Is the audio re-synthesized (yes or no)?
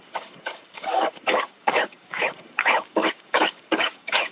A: yes